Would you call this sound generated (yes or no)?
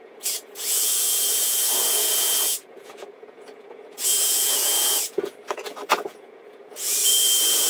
yes